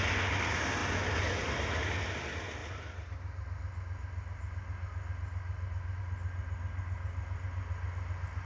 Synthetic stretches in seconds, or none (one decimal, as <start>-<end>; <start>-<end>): none